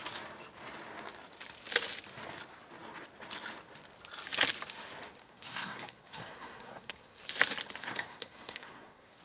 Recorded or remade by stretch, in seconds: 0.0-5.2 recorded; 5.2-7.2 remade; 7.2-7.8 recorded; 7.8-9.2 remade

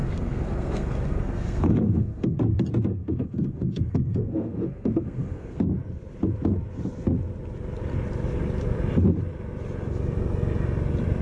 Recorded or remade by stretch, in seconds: 0.0-2.4 remade; 2.4-2.9 recorded; 2.9-5.6 remade; 5.6-11.2 recorded